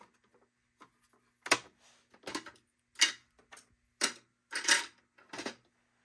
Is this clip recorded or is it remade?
recorded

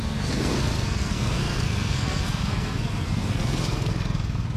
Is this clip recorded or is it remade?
remade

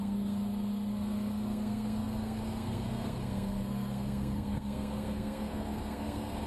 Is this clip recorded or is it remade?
remade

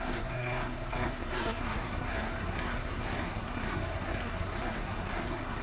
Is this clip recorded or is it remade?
remade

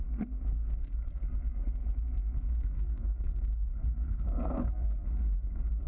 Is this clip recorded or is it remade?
remade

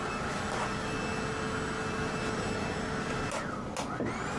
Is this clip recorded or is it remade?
recorded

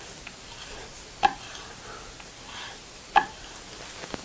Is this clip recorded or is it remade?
recorded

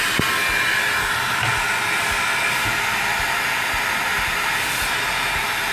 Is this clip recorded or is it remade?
recorded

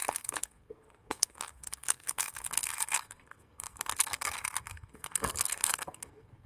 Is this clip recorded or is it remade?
remade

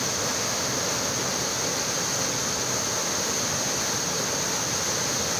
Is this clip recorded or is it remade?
recorded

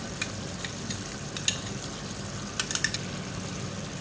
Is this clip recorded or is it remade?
recorded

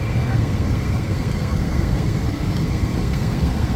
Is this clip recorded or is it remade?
remade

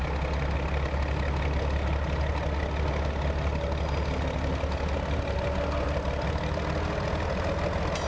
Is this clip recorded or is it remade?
recorded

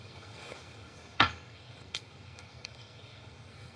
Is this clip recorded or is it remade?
remade